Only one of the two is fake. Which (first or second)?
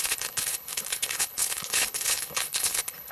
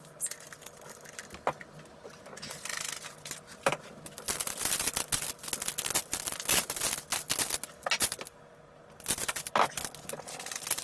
first